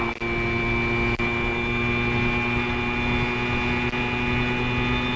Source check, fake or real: real